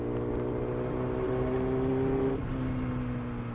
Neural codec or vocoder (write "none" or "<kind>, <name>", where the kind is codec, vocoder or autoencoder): none